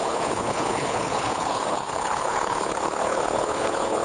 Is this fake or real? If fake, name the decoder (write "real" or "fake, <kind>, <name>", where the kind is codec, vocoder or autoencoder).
fake, codec, HILCodec